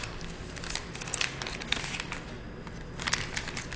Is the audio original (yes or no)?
yes